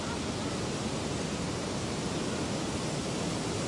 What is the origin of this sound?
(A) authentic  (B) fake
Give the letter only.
A